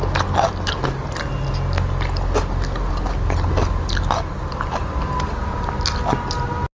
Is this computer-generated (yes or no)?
no